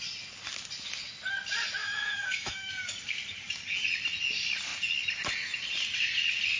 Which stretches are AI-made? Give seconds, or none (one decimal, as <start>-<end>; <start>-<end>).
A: 1.8-2.7